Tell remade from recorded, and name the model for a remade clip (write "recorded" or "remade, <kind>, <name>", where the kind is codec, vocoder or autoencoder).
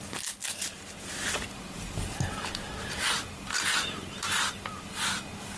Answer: recorded